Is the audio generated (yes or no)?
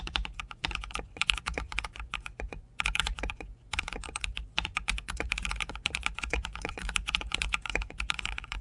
yes